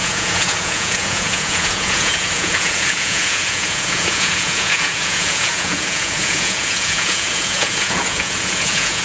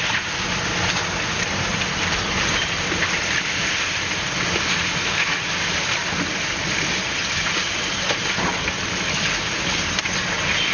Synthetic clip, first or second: first